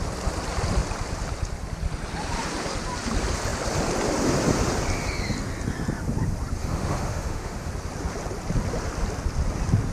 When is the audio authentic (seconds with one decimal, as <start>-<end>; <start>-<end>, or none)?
0.0-6.6; 7.7-9.9